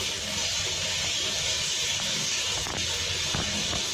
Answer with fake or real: real